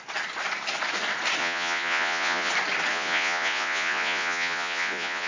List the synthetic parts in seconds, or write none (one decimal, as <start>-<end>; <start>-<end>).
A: 1.4-2.5; 2.9-5.3